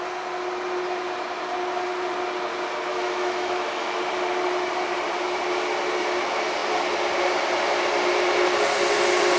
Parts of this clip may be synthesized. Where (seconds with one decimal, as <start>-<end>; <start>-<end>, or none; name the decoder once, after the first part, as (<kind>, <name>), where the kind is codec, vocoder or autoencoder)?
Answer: 2.9-4.0 (autoencoder, DAC-VAE)